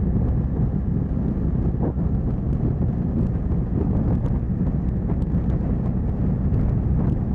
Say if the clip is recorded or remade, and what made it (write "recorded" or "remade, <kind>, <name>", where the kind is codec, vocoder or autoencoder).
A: recorded